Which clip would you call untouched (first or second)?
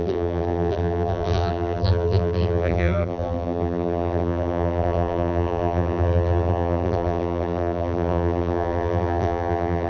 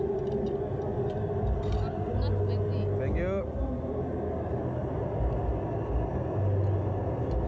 second